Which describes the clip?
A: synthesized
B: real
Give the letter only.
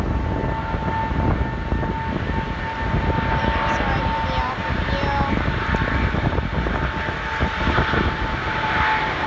B